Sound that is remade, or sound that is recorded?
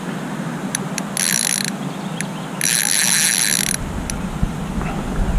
recorded